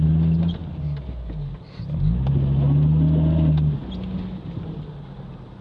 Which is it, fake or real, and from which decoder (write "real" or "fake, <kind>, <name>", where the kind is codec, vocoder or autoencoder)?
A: real